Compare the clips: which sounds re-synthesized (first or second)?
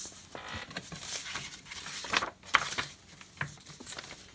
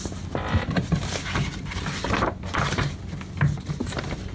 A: second